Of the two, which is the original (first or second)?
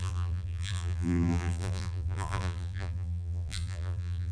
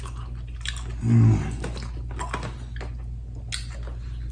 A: second